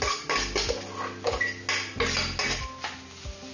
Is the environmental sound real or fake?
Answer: real